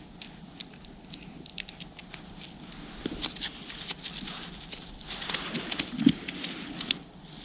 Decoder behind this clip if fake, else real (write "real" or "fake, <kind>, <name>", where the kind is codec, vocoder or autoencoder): real